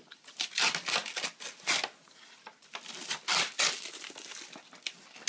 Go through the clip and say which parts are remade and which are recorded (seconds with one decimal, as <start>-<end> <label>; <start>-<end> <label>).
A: 0.0-5.3 recorded